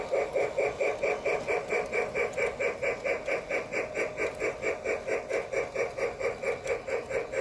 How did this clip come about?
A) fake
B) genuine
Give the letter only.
B